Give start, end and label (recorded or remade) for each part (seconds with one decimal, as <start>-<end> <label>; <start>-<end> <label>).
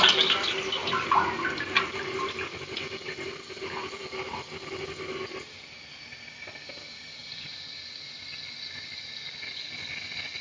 0.0-10.4 recorded